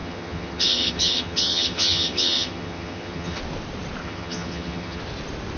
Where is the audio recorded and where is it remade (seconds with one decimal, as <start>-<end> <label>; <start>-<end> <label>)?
0.0-3.4 remade; 3.4-4.0 recorded; 4.0-5.0 remade; 5.0-5.6 recorded